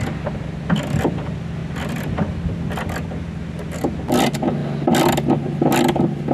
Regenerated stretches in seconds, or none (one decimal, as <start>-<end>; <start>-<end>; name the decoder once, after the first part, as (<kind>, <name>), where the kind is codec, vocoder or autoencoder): none